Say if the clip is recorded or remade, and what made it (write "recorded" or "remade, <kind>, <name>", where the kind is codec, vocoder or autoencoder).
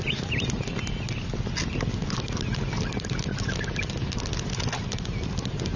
recorded